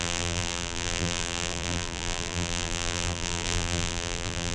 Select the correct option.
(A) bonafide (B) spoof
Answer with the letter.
B